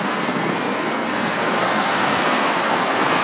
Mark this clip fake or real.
fake